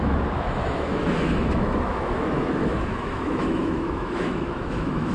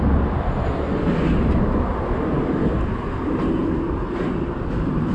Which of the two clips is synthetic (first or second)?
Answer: first